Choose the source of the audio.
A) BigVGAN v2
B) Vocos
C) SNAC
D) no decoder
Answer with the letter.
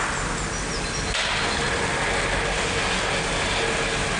D